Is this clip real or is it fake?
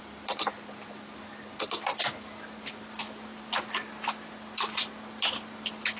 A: real